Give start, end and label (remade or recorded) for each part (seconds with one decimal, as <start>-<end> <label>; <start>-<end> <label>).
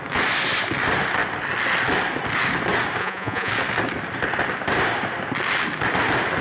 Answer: 0.0-3.0 recorded; 3.0-3.5 remade; 3.5-6.4 recorded